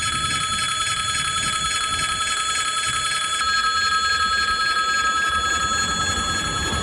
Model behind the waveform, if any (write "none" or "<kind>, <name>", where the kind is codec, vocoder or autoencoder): none